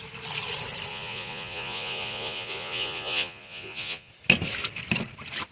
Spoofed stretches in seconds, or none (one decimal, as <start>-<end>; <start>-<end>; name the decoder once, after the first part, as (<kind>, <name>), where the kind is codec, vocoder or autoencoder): 0.9-4.1 (vocoder, Vocos)